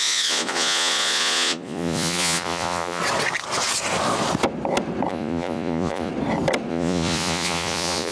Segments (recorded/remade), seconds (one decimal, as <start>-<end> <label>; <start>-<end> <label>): 0.0-3.0 remade; 3.0-5.1 recorded; 5.1-6.1 remade; 6.1-6.7 recorded; 6.7-8.1 remade